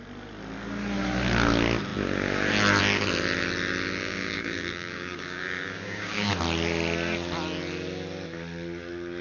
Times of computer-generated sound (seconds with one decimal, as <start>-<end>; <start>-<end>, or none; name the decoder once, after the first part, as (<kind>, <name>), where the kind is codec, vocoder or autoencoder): 4.0-6.3 (codec, DAC)